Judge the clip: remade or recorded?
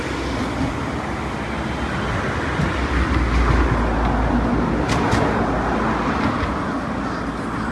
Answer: recorded